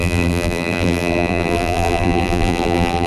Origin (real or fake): fake